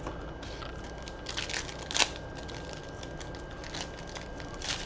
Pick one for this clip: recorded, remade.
recorded